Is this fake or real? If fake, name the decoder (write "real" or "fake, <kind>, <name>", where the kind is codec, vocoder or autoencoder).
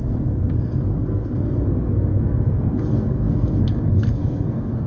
fake, codec, SNAC